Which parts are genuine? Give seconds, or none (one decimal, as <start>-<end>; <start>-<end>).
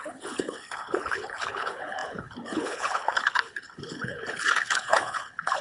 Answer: none